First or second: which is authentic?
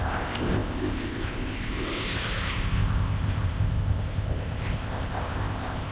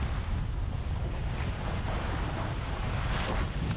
second